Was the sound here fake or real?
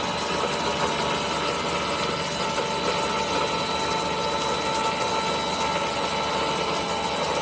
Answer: real